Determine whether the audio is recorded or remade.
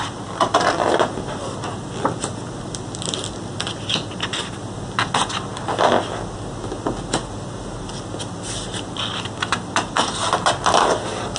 recorded